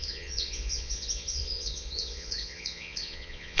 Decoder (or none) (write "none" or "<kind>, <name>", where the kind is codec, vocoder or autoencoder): vocoder, Vocos